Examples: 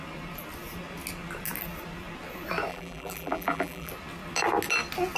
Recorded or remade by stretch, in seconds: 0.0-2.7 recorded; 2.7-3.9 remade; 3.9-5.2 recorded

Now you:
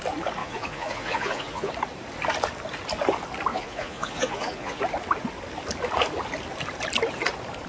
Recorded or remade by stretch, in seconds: 0.0-0.4 recorded; 0.4-1.7 remade; 1.7-3.5 recorded; 3.5-4.8 remade; 4.8-7.7 recorded